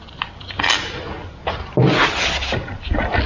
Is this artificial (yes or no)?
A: no